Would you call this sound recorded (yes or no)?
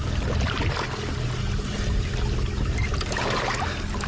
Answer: yes